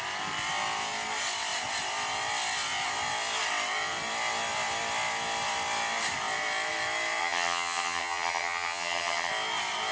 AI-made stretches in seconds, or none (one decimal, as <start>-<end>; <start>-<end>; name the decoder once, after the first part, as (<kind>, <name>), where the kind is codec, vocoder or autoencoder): 7.2-9.3 (vocoder, HiFi-GAN)